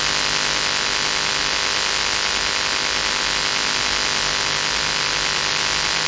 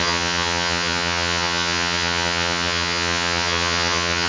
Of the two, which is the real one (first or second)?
first